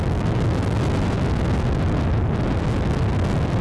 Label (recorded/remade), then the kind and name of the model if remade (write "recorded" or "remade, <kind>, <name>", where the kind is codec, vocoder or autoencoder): recorded